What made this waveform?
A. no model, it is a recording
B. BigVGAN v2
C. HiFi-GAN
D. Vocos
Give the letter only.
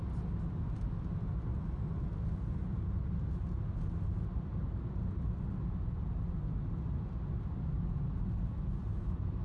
A